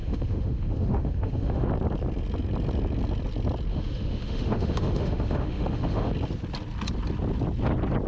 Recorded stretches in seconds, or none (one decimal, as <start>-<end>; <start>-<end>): 1.7-3.7; 6.1-8.1